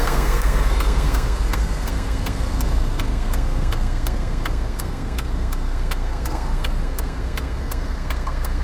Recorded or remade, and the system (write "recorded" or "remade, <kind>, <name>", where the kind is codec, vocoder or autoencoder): remade, codec, SNAC